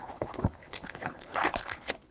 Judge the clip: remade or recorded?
remade